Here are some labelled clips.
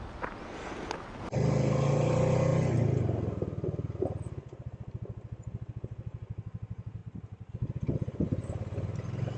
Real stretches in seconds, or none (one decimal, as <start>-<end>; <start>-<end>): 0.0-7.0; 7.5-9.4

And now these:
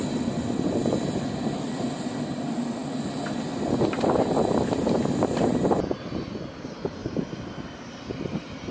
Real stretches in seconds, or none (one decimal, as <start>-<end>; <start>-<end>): 0.0-7.0; 7.9-8.7

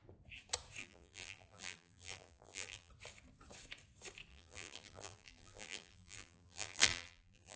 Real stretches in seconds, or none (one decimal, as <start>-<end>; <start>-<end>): 0.0-0.8; 2.9-4.3